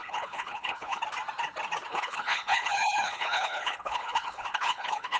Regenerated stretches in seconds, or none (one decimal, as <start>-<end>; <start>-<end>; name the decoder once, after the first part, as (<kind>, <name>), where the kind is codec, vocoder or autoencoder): 0.0-1.0 (codec, HILCodec); 1.9-5.2